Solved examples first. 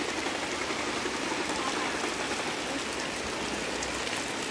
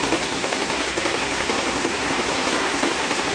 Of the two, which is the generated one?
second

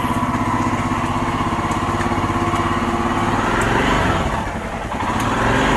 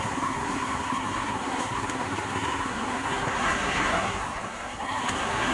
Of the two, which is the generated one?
second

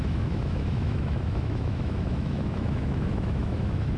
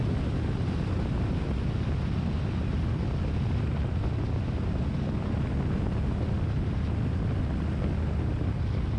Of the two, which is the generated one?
first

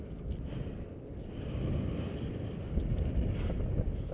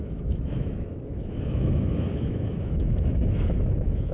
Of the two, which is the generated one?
second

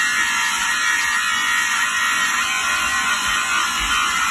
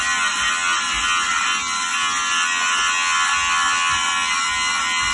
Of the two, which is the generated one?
first